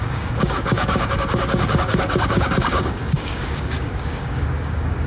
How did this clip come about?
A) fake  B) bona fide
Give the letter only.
A